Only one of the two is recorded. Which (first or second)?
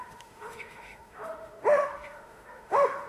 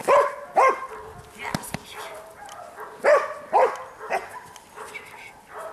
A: second